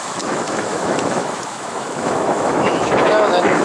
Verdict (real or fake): fake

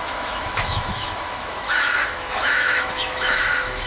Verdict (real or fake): fake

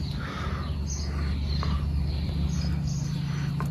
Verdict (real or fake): real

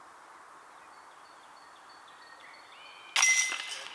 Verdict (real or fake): real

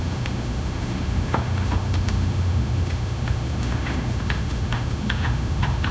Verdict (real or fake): fake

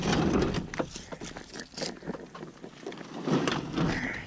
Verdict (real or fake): real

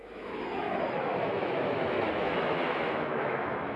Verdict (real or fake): fake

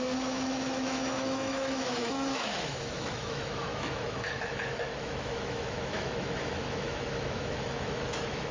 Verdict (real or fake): fake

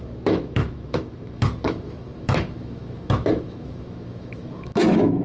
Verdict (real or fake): fake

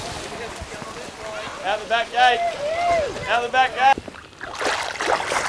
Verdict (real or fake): real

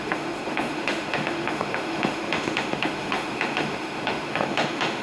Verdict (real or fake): fake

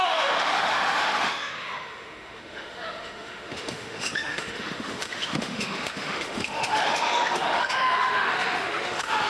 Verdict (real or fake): fake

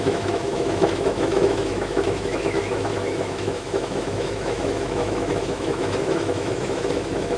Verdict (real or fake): fake